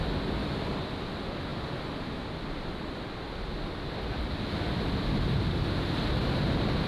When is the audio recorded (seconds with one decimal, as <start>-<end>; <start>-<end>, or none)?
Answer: 0.0-6.9